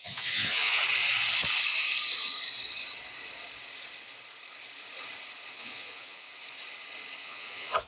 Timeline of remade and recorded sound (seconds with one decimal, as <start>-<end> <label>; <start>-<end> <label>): 0.0-0.8 remade; 0.8-5.5 recorded; 5.5-6.4 remade; 6.4-7.2 recorded; 7.2-7.9 remade